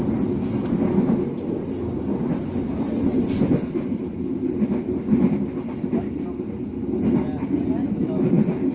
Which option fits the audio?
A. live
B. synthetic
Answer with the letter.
A